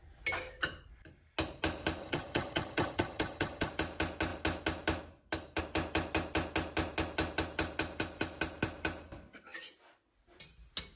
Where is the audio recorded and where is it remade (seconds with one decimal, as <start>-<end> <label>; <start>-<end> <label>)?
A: 0.0-2.0 recorded; 2.0-3.7 remade; 3.7-11.0 recorded